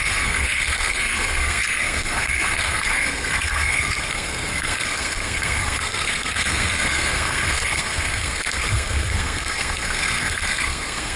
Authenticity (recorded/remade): remade